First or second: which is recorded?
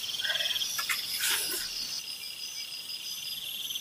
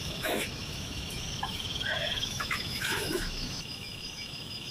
first